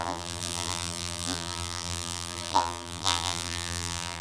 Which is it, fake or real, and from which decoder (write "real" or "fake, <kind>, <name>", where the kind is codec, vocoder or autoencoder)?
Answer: fake, vocoder, BigVGAN v2